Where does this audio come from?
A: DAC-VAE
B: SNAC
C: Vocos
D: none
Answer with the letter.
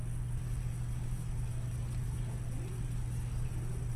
D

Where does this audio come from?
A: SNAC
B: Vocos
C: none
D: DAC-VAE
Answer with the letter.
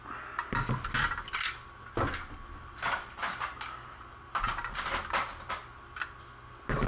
C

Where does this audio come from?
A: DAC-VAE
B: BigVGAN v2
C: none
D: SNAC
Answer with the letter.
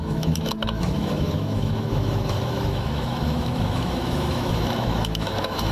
A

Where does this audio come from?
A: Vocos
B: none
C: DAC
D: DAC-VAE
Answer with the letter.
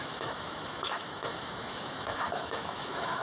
D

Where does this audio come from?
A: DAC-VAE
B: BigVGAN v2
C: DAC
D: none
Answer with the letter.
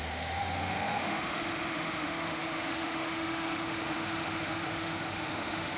A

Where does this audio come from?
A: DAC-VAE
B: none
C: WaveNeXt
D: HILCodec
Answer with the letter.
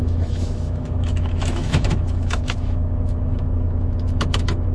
A